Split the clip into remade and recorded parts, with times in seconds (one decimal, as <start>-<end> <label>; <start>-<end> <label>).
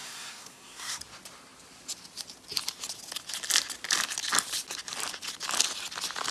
0.0-1.0 remade; 1.0-6.3 recorded